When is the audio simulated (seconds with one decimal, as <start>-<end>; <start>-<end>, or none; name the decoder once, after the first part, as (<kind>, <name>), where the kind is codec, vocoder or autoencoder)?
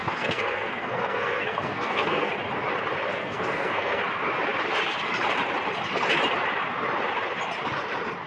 0.0-2.3 (codec, SNAC); 3.1-4.0